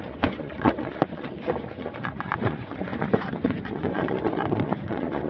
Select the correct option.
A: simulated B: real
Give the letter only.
A